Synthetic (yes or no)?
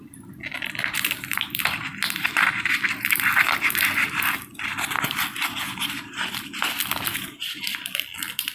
no